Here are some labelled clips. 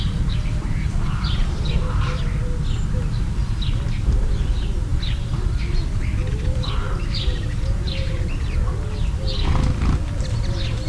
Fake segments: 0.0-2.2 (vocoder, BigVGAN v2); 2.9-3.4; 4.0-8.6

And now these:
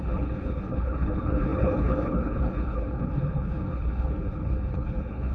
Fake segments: 0.0-5.3 (codec, HILCodec)

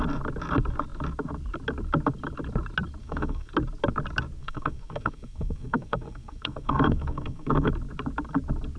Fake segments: 3.0-3.5 (codec, SNAC); 4.4-7.7

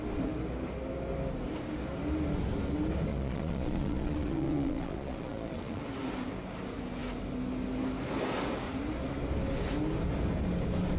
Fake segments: 3.1-5.8 (vocoder, Vocos)